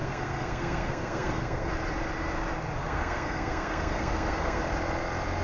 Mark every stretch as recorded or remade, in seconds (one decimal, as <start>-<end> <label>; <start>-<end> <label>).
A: 0.0-1.7 remade; 1.7-2.8 recorded; 2.8-4.6 remade; 4.6-5.4 recorded